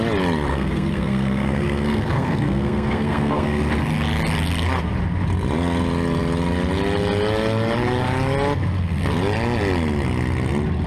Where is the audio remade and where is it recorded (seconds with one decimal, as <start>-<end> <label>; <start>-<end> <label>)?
0.0-0.5 recorded; 0.5-3.6 remade; 3.6-10.9 recorded